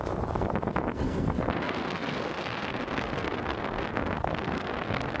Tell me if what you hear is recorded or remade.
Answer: remade